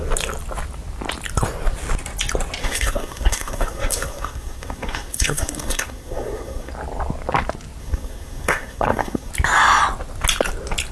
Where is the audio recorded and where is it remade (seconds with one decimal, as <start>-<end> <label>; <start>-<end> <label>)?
0.0-2.6 recorded; 2.6-6.7 remade; 6.7-7.8 recorded; 7.8-9.3 remade; 9.3-10.9 recorded